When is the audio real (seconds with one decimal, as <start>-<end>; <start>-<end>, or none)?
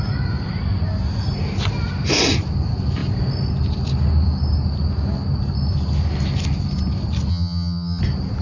0.0-7.3; 8.0-8.4